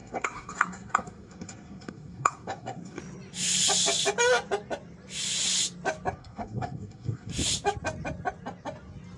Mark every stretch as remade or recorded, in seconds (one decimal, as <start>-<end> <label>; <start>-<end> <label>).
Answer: 0.0-3.0 remade; 3.0-6.2 recorded; 6.2-7.3 remade; 7.3-9.2 recorded